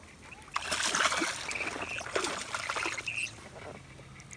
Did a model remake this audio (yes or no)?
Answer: no